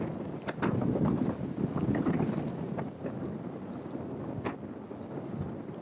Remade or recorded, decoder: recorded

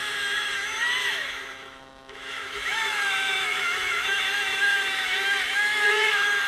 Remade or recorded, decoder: remade, autoencoder, DAC-VAE